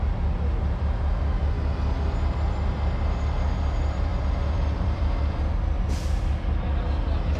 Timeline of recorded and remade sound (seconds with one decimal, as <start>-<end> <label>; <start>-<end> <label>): 0.0-4.1 recorded; 4.1-5.4 remade; 5.4-7.4 recorded